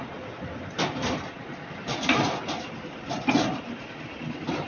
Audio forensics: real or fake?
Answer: real